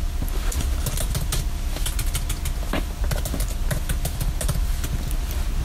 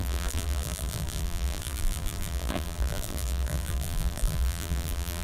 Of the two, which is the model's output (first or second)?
second